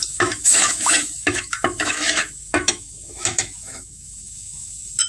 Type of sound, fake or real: fake